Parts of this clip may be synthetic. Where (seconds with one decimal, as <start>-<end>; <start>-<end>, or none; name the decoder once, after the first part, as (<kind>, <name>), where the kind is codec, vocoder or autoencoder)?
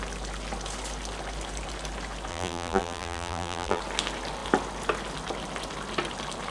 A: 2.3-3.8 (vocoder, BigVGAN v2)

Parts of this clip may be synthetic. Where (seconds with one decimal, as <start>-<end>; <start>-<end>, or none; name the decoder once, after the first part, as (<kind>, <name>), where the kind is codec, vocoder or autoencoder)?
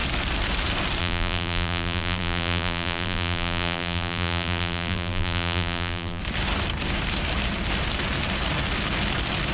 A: 1.0-6.2 (vocoder, BigVGAN v2)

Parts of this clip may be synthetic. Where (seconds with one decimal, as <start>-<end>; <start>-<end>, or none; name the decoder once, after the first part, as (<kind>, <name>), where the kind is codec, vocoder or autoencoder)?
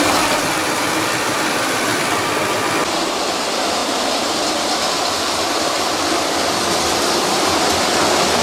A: 0.0-1.9 (vocoder, BigVGAN v2); 2.9-8.4